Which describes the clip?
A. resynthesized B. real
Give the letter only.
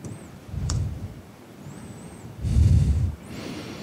A